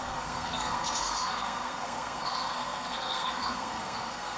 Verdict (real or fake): fake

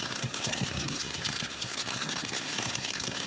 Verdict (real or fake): fake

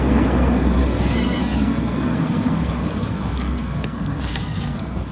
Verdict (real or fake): fake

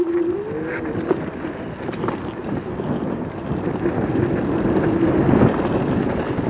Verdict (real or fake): real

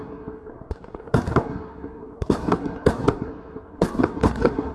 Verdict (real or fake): fake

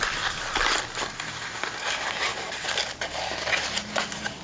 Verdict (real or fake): real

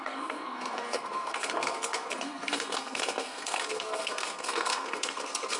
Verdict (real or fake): fake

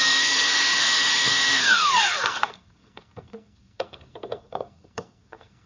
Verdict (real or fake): fake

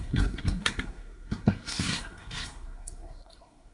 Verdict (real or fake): fake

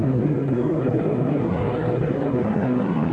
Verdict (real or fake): fake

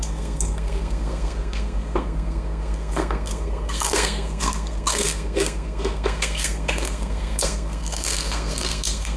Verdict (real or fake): fake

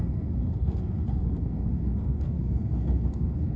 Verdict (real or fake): fake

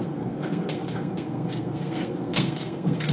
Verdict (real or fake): fake